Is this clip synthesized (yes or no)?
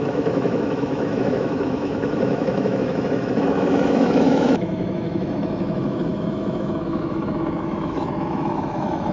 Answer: yes